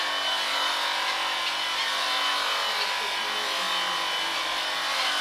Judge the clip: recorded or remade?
recorded